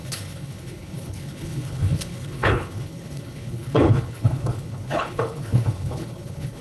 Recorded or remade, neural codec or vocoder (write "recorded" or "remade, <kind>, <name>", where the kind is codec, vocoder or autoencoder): remade, codec, HILCodec